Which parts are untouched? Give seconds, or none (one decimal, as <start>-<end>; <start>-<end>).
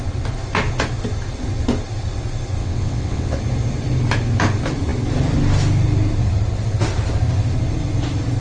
0.0-2.6; 3.4-8.4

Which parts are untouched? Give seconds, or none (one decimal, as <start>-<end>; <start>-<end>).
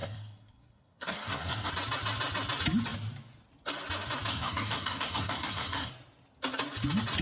1.7-4.3; 5.9-7.2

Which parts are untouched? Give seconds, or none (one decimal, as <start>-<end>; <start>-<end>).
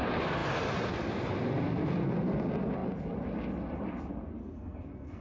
0.0-4.4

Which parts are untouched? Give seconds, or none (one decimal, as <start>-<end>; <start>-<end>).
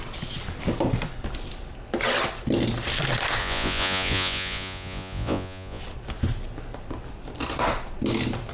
0.0-3.4; 5.8-8.5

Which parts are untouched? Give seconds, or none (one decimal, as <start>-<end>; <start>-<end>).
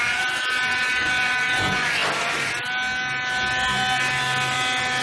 2.0-5.0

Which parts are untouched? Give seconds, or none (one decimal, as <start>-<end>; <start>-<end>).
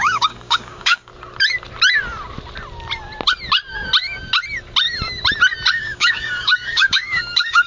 1.1-5.7